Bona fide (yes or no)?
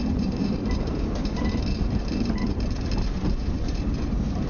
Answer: no